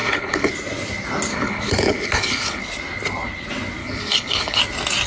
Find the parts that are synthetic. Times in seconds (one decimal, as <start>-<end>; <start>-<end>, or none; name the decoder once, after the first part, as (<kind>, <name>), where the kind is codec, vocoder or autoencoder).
0.0-0.5 (codec, HILCodec); 1.3-2.6; 3.8-4.6